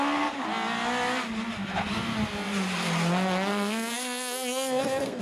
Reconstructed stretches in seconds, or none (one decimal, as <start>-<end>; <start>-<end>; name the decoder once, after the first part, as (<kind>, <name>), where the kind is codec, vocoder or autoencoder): 3.5-5.2 (codec, SNAC)